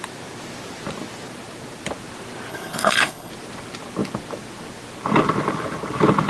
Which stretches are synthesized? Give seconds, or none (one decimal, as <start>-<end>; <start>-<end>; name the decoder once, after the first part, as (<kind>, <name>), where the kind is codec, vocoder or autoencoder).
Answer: 2.5-3.3 (codec, HILCodec)